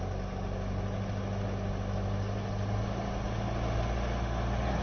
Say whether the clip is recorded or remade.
recorded